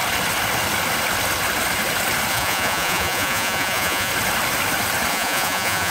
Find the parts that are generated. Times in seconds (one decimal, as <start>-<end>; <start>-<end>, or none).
2.3-4.1; 5.1-5.9